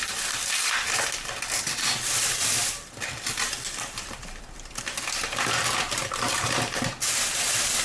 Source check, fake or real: fake